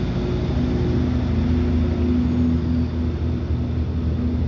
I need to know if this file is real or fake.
real